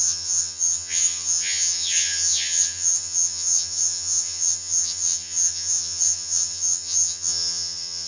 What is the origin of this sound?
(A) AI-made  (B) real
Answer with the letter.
A